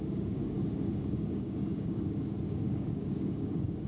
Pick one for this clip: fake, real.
fake